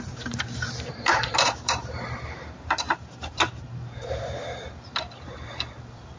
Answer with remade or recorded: remade